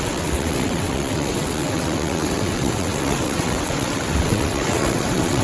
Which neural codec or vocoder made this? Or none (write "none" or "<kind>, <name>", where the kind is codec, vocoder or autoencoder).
vocoder, WaveNeXt